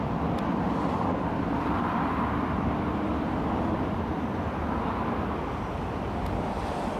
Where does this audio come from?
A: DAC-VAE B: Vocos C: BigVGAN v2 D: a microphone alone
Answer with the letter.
C